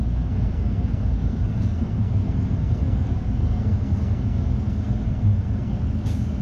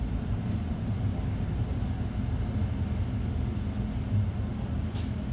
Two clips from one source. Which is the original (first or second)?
second